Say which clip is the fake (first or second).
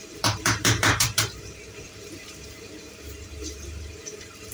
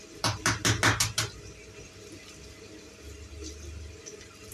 first